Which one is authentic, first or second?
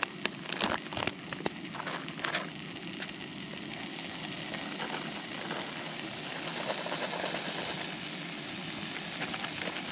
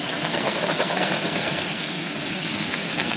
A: first